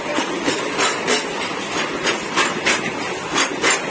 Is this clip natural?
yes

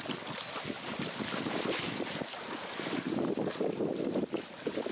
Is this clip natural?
yes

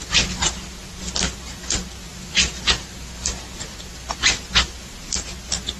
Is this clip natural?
yes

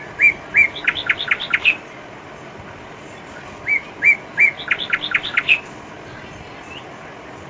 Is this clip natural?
yes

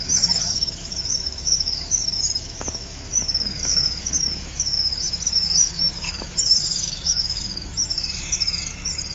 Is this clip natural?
no